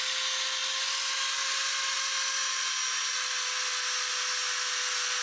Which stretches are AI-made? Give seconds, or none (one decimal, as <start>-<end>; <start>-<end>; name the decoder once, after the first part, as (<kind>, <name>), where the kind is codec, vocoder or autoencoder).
none